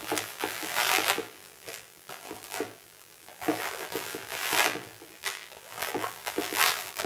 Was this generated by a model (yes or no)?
yes